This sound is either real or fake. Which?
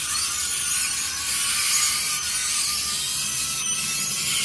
real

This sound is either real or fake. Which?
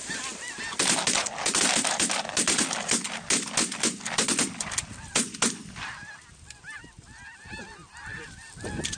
real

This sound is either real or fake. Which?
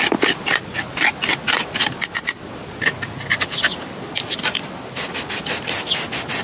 real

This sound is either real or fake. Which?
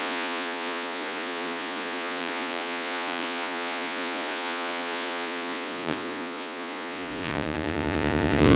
fake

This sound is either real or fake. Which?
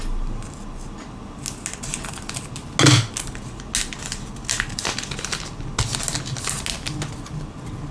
real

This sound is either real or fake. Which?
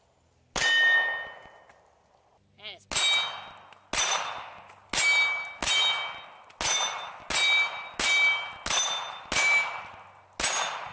real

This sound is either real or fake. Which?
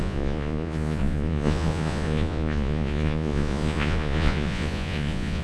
fake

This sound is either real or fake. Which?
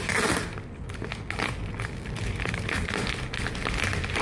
real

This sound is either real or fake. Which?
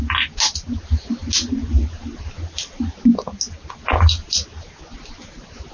real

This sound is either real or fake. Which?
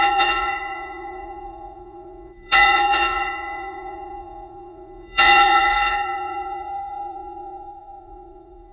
fake